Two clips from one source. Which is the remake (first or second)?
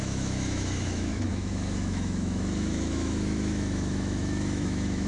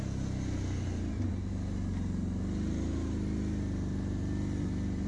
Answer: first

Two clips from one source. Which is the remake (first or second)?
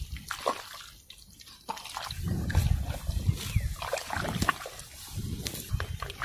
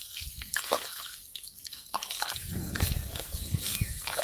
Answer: second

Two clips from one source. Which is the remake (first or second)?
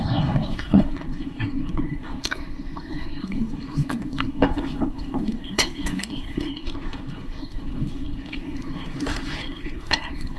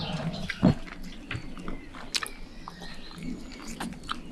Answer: first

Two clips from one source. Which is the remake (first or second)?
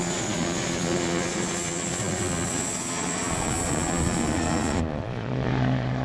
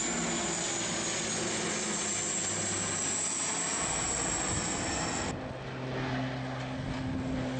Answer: first